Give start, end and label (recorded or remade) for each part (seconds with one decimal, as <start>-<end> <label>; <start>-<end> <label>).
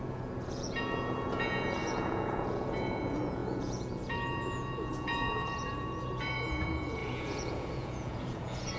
0.0-8.8 remade